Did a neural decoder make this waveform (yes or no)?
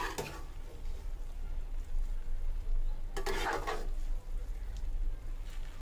no